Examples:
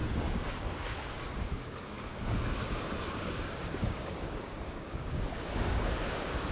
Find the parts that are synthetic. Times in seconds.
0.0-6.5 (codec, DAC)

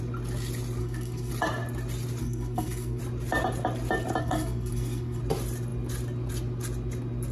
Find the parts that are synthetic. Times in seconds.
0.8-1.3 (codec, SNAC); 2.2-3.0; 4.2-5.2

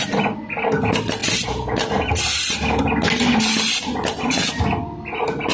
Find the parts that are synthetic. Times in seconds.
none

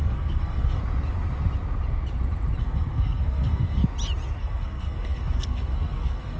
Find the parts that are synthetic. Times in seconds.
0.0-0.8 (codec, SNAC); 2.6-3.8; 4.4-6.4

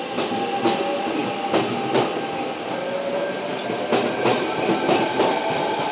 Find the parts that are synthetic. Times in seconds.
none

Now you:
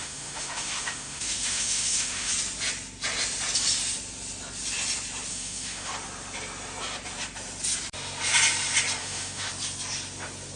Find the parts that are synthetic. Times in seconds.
0.0-2.3 (autoencoder, DAC-VAE); 5.3-5.9; 9.0-9.5